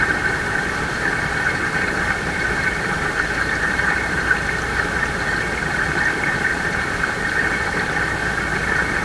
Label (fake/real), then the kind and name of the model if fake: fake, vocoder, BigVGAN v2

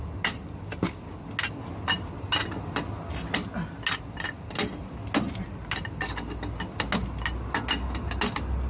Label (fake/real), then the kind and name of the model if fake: real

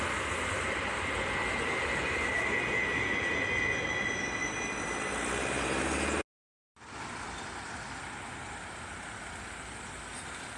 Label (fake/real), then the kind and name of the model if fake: real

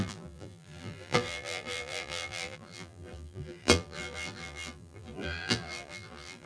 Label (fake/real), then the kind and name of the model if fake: fake, vocoder, BigVGAN v2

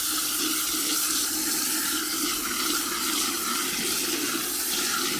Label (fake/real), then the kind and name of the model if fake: real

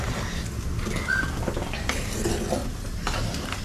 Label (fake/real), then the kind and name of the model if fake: real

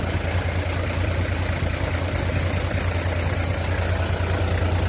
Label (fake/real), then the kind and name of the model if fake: real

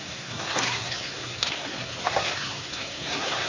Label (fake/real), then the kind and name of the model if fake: fake, codec, SNAC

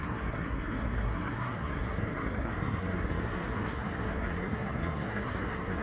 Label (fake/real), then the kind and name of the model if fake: fake, codec, SNAC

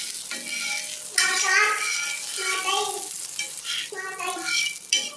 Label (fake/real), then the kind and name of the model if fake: real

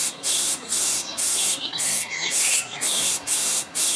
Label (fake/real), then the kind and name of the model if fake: fake, codec, SNAC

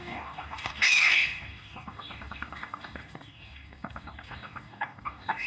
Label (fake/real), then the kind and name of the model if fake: fake, codec, DAC